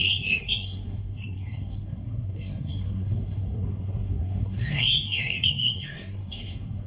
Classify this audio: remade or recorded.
remade